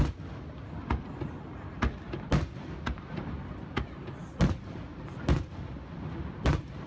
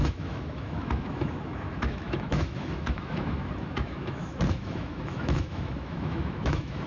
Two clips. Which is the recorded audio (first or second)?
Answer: first